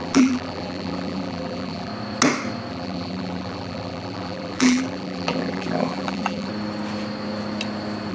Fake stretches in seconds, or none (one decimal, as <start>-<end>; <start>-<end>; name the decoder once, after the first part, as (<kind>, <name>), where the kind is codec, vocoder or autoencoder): 0.0-1.9 (vocoder, BigVGAN v2); 2.7-6.5